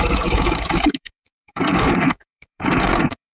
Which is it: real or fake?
fake